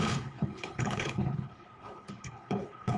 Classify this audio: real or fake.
fake